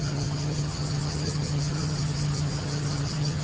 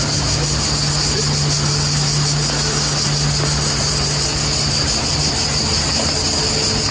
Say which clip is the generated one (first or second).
first